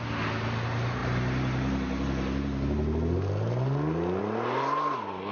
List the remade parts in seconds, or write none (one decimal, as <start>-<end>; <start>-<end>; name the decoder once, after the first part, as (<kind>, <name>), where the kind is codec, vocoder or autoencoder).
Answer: none